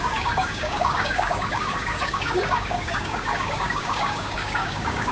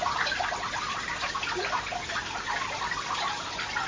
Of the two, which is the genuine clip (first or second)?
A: second